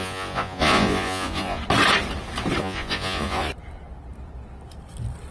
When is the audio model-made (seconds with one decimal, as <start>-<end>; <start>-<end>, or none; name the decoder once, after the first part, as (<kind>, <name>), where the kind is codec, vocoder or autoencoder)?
0.0-1.6 (vocoder, Vocos); 2.6-3.5